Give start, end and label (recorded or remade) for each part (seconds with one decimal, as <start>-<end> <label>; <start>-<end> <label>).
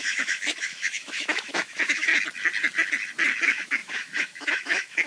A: 0.0-2.1 remade; 2.1-3.4 recorded; 3.4-5.1 remade